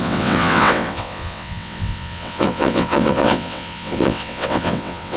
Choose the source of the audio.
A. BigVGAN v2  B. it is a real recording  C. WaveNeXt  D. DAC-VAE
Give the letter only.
C